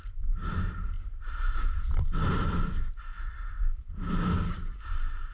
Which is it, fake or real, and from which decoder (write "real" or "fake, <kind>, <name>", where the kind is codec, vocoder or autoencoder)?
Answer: real